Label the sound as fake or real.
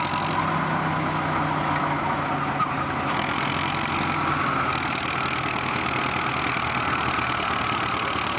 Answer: real